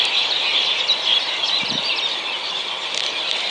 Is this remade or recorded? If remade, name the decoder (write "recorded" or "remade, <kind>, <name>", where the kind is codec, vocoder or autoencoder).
recorded